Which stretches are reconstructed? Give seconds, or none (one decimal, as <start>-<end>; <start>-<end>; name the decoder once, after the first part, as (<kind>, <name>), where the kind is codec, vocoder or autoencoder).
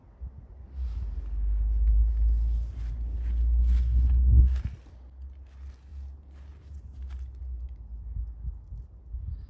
3.6-4.6 (codec, SNAC)